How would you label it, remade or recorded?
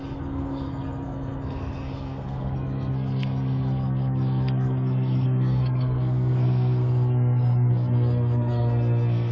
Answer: remade